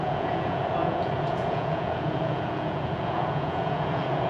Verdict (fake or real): fake